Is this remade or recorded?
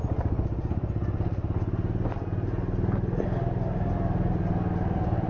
recorded